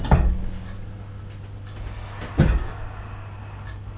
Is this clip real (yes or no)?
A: yes